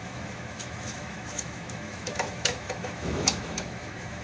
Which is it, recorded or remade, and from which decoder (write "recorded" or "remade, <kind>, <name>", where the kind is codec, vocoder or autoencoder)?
remade, autoencoder, DAC-VAE